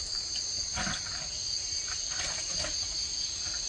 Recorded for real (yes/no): yes